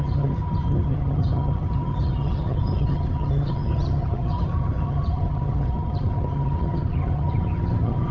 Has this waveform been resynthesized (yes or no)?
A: yes